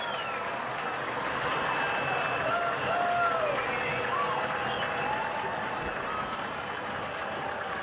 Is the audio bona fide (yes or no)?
yes